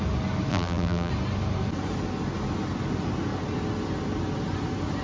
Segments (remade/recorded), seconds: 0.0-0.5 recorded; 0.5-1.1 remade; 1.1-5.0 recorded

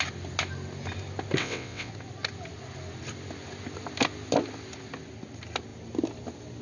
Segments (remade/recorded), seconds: 0.0-1.4 recorded; 1.4-1.9 remade; 1.9-6.6 recorded

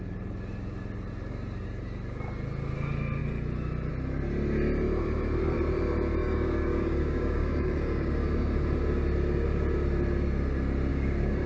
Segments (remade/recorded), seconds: 0.0-6.2 recorded; 6.2-8.1 remade; 8.1-10.9 recorded; 10.9-11.5 remade

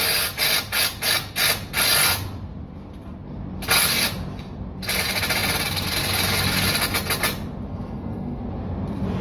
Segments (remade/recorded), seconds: 0.0-7.7 recorded; 7.7-8.4 remade; 8.4-9.2 recorded

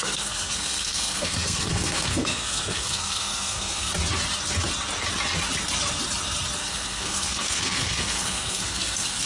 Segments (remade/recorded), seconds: 0.0-3.9 remade; 3.9-6.6 recorded; 6.6-9.3 remade

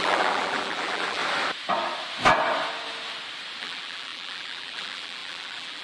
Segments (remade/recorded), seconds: 0.0-1.2 remade; 1.2-3.6 recorded; 3.6-5.8 remade

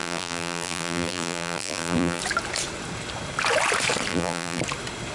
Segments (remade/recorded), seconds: 0.0-2.2 remade; 2.2-4.1 recorded; 4.1-4.6 remade; 4.6-5.1 recorded